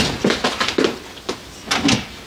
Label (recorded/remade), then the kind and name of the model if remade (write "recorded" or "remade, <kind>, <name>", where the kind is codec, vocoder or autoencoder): recorded